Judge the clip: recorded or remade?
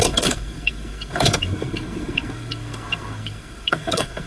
remade